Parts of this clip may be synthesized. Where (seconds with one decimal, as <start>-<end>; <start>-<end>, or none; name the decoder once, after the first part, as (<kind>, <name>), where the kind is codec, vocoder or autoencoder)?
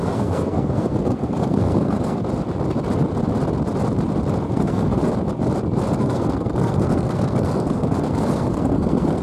0.0-2.2 (codec, SNAC); 4.5-5.0; 6.0-9.2